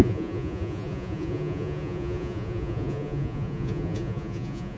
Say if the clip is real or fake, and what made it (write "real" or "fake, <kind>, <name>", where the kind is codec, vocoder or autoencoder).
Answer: fake, vocoder, Vocos